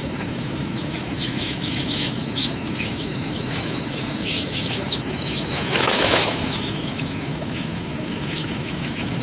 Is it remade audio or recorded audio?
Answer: remade